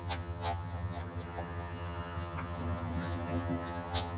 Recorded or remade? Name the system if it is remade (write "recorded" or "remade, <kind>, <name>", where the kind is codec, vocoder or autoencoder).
remade, vocoder, HiFi-GAN